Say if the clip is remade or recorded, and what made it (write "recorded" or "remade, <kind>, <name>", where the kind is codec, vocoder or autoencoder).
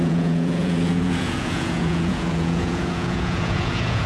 remade, vocoder, Vocos